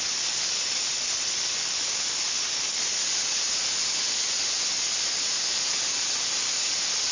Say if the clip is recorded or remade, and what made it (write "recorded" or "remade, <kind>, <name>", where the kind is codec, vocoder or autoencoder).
remade, vocoder, BigVGAN v2